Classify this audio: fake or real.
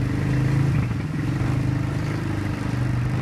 fake